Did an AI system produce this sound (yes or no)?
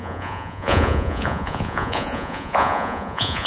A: yes